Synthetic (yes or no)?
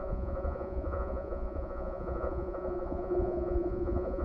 yes